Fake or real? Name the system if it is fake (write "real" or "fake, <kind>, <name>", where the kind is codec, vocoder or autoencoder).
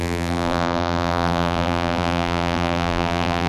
fake, vocoder, BigVGAN v2